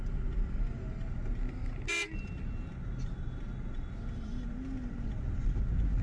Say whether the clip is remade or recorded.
recorded